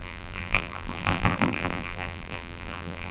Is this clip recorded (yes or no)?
no